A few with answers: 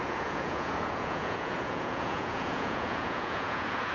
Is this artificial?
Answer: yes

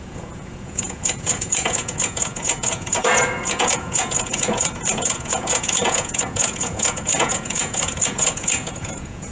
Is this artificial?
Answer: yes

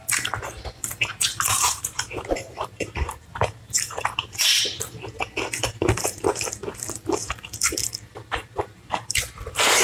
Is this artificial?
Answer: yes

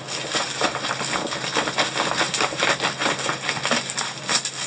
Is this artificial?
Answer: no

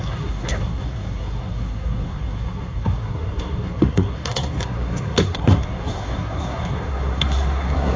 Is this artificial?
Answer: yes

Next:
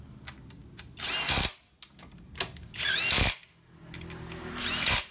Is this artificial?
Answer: no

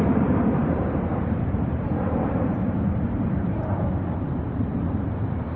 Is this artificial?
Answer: yes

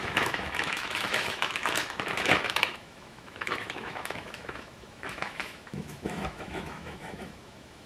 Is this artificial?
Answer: yes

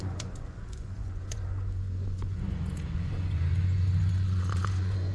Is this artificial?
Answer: yes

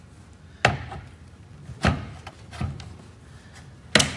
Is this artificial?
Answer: no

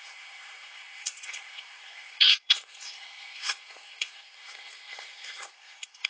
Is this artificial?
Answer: yes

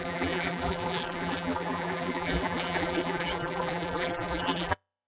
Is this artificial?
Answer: yes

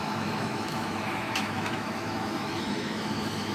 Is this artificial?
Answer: yes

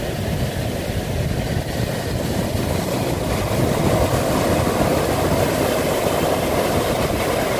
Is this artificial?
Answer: no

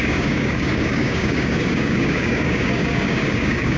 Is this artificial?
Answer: yes